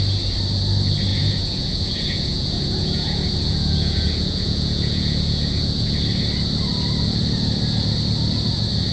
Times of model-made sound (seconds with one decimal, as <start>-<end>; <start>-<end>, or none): 1.1-5.9